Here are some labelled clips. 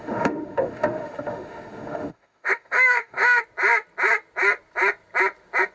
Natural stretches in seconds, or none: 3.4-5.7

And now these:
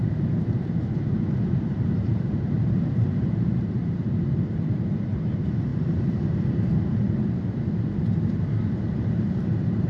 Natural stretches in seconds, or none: none

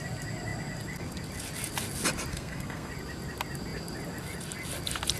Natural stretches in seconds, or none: 0.0-2.3; 2.9-5.2

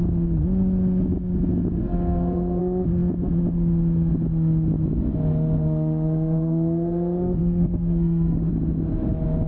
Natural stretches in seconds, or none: 0.0-1.8; 2.6-5.3; 8.5-9.5

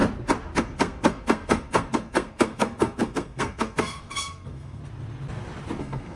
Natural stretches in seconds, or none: 0.0-0.6; 4.8-5.8

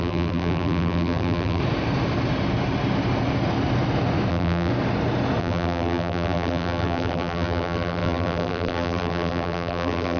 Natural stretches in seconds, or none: 1.6-4.3; 4.7-5.4

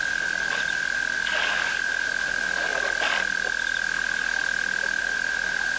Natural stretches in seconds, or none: 2.7-5.0

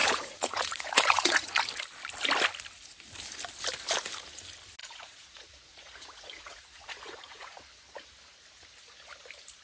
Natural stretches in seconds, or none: 1.6-4.8; 7.6-9.6